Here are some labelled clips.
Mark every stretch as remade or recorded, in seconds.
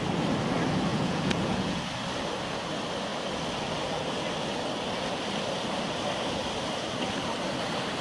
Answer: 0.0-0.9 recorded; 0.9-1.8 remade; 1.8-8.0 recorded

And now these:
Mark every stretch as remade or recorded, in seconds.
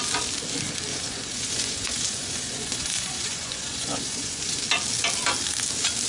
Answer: 0.0-0.9 recorded; 0.9-4.6 remade; 4.6-6.1 recorded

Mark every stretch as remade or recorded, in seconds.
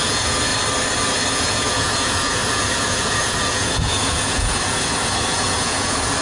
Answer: 0.0-0.5 remade; 0.5-1.3 recorded; 1.3-6.2 remade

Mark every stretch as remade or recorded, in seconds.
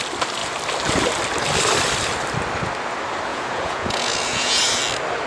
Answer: 0.0-3.3 recorded; 3.3-4.6 remade; 4.6-5.3 recorded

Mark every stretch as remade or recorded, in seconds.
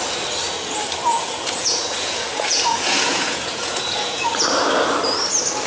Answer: 0.0-1.1 recorded; 1.1-4.3 remade; 4.3-5.7 recorded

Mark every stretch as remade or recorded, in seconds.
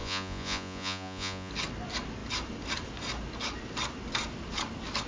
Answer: 0.0-1.5 remade; 1.5-5.1 recorded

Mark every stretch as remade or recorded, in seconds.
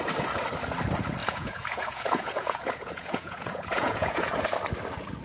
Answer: 0.0-1.2 recorded; 1.2-4.3 remade; 4.3-5.2 recorded